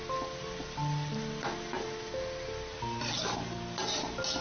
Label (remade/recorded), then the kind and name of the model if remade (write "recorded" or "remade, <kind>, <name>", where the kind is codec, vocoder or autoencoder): recorded